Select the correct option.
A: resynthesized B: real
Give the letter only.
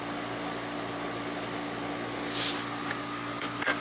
B